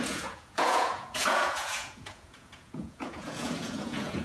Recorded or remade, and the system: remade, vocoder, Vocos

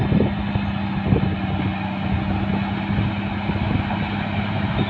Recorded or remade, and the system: recorded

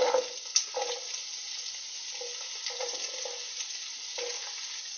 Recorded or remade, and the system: recorded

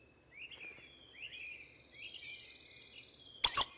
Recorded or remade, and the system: recorded